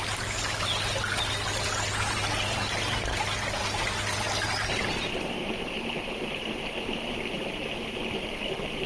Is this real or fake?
real